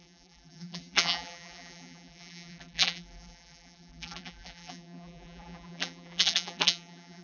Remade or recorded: remade